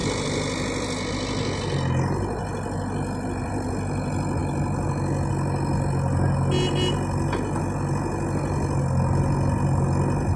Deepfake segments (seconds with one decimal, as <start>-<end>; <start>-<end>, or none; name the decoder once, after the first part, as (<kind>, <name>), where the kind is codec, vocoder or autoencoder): none